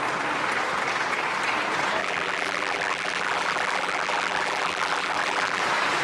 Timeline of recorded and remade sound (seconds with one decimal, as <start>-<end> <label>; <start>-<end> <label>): 0.0-2.0 recorded; 2.0-5.6 remade; 5.6-6.0 recorded